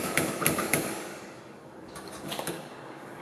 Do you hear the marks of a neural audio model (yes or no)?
yes